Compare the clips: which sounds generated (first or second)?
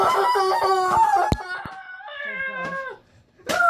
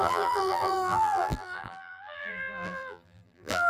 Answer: second